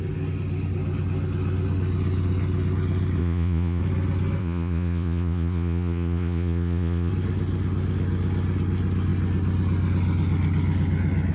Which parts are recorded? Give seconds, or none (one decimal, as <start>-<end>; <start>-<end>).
0.0-3.2; 3.8-4.4; 7.1-11.3